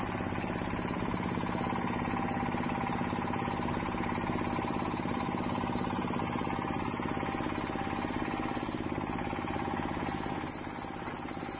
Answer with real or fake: real